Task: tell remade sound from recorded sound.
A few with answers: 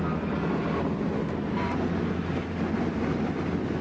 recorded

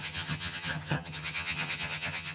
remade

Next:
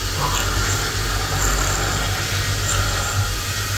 recorded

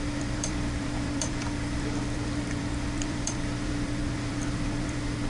remade